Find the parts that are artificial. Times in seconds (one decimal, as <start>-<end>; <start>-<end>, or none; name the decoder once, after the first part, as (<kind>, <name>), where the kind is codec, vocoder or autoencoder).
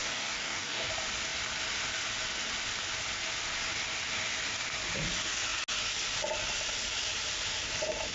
0.0-0.9 (codec, DAC)